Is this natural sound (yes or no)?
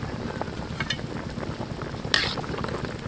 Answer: yes